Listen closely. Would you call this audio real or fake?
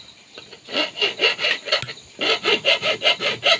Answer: real